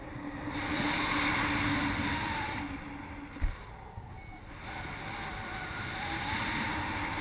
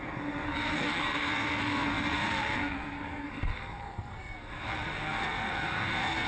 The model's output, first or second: second